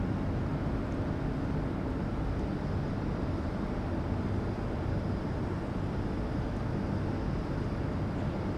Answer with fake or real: real